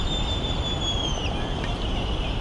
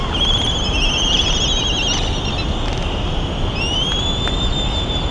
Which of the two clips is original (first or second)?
second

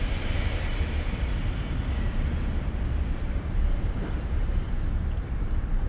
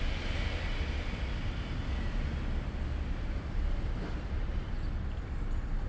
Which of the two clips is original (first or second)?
second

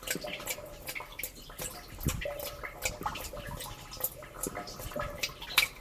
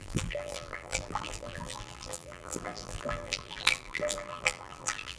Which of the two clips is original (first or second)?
first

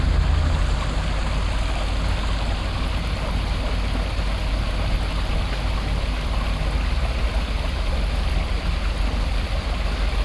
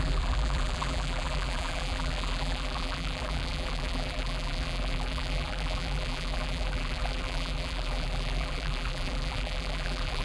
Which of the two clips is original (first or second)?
first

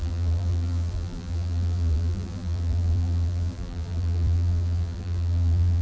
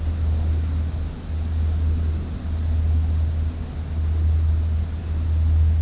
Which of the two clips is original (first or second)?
second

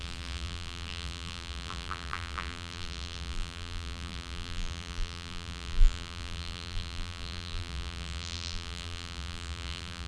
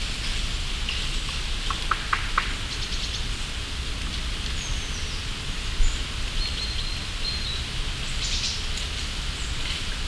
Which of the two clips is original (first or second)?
second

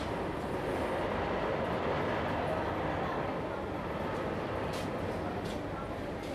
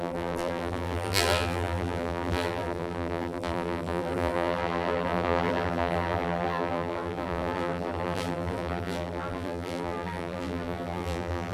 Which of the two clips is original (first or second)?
first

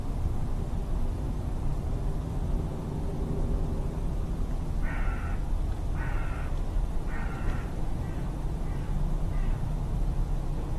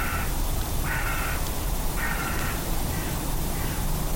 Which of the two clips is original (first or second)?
first